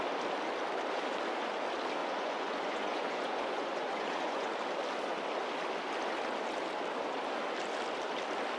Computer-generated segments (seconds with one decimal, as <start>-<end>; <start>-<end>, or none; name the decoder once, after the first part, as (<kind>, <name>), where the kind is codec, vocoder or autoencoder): 2.0-4.5 (vocoder, Vocos)

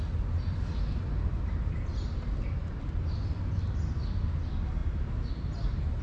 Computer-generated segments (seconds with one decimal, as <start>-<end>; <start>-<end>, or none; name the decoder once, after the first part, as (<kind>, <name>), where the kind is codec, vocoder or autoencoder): 2.7-3.4 (vocoder, BigVGAN v2)

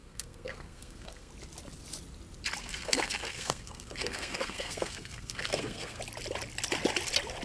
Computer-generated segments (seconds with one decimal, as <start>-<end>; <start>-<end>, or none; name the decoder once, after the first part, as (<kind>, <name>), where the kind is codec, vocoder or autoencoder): 0.0-1.3 (codec, SNAC); 2.6-6.0